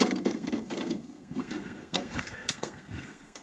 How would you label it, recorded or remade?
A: remade